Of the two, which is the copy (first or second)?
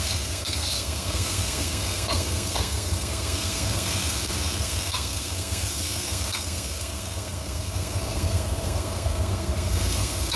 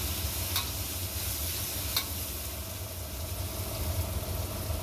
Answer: first